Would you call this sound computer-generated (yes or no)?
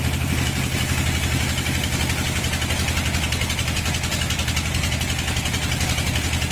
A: no